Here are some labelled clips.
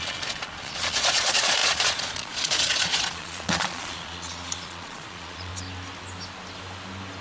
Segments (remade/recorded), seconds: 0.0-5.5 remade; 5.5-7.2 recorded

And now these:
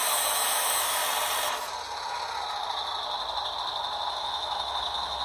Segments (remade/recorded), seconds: 0.0-1.0 remade; 1.0-4.1 recorded; 4.1-5.2 remade

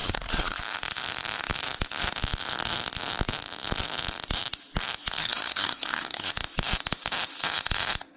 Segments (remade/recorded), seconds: 0.0-0.6 remade; 0.6-5.2 recorded; 5.2-6.3 remade; 6.3-8.2 recorded

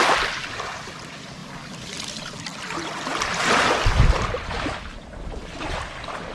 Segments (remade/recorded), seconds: 0.0-6.3 recorded

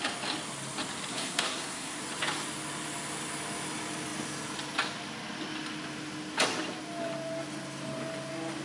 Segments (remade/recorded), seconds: 0.0-1.1 recorded; 1.1-2.0 remade; 2.0-8.6 recorded